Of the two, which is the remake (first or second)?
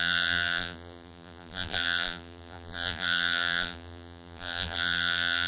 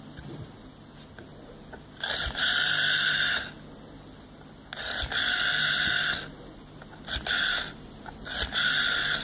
first